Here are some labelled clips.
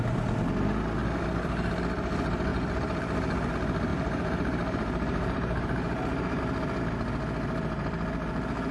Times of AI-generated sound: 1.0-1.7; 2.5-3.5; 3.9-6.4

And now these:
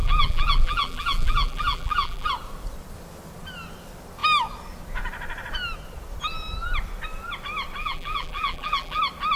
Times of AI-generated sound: 0.0-2.3; 7.8-9.0

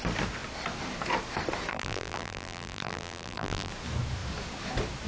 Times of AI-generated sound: 1.7-3.7

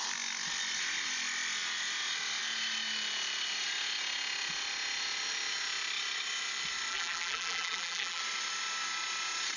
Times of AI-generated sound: 6.9-8.2

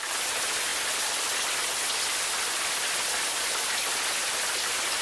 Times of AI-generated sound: none

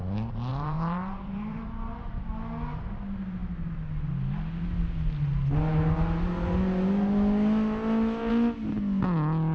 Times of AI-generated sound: 0.5-2.1

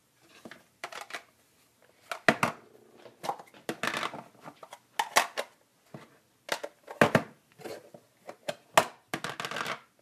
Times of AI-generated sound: 0.0-1.0